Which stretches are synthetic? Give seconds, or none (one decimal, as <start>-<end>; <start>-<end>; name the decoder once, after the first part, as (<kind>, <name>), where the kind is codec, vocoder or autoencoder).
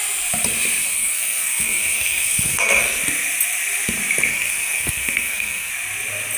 0.8-3.0 (codec, SNAC); 4.3-5.7